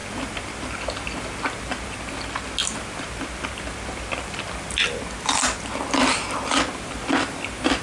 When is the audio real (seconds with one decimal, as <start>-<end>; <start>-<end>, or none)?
0.0-7.8